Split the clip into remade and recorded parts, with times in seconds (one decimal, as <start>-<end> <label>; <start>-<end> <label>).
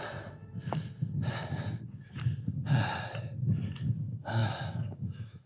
0.0-4.4 recorded; 4.4-5.5 remade